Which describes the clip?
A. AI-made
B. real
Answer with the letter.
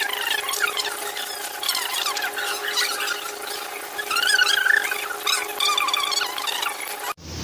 B